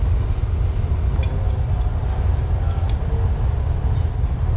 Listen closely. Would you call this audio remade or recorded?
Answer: recorded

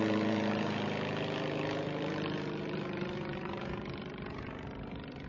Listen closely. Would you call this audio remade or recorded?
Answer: remade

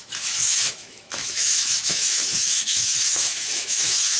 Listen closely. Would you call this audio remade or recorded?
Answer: remade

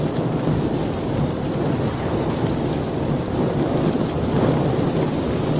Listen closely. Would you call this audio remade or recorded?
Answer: recorded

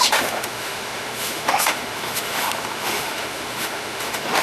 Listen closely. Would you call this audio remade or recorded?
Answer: remade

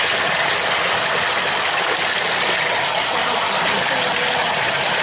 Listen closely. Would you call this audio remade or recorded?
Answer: recorded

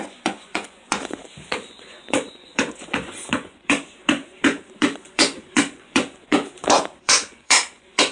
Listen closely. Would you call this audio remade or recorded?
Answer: remade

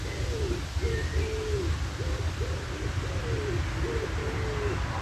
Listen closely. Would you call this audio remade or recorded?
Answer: recorded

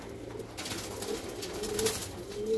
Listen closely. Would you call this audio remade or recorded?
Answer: recorded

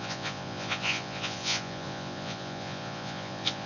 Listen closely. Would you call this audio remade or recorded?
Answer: remade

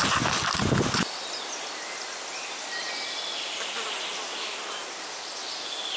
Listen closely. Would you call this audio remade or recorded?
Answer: recorded